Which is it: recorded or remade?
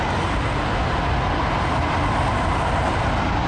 recorded